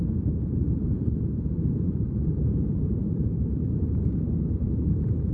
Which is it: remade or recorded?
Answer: remade